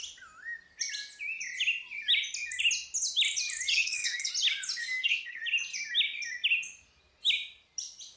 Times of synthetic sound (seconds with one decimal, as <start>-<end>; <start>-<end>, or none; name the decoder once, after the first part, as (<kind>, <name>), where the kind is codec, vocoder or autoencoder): 3.7-4.3 (codec, SNAC); 4.8-5.4